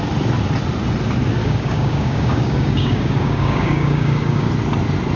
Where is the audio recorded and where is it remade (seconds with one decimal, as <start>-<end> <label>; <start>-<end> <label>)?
0.0-1.4 recorded; 1.4-4.5 remade; 4.5-5.2 recorded